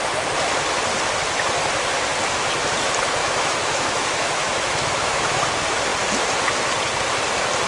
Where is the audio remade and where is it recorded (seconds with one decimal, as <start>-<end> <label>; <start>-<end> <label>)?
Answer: 0.0-3.2 recorded; 3.2-5.4 remade; 5.4-7.7 recorded